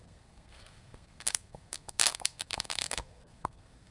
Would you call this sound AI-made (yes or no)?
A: yes